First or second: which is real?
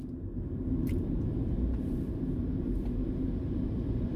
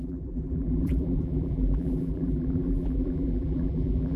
first